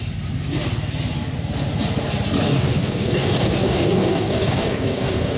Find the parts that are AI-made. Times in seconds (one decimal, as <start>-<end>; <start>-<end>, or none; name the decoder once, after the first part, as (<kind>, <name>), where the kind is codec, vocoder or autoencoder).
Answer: 2.5-5.4 (codec, DAC)